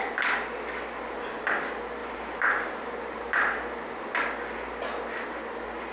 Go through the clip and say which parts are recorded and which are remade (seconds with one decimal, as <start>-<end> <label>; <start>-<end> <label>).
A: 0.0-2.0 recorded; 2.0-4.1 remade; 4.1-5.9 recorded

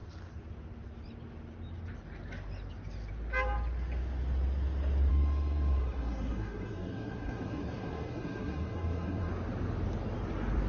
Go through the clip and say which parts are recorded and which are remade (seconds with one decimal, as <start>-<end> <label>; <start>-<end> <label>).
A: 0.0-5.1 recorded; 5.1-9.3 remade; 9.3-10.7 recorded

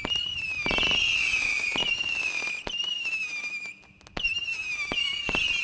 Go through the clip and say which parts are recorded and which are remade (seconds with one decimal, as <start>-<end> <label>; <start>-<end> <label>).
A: 0.0-5.6 recorded

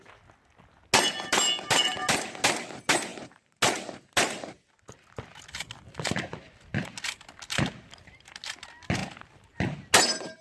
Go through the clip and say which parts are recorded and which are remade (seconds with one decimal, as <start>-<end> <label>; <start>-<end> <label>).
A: 0.0-10.4 recorded

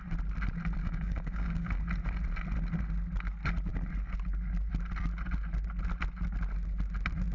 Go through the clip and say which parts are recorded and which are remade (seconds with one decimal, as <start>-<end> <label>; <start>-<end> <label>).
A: 0.0-0.8 recorded; 0.8-1.8 remade; 1.8-7.3 recorded

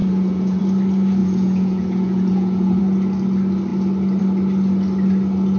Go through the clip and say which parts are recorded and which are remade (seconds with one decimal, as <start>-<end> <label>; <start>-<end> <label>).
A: 0.0-0.6 remade; 0.6-1.2 recorded; 1.2-2.8 remade; 2.8-5.6 recorded

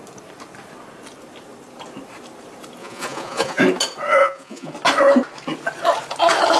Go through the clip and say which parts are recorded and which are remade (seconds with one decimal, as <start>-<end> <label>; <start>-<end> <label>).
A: 0.0-2.8 recorded; 2.8-3.6 remade; 3.6-4.2 recorded; 4.2-4.7 remade; 4.7-6.6 recorded